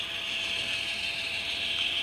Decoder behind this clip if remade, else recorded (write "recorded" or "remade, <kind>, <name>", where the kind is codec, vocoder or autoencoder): remade, vocoder, BigVGAN v2